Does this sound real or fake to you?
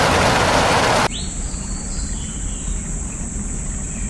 real